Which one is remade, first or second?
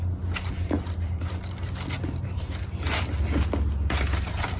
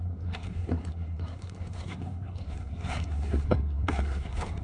second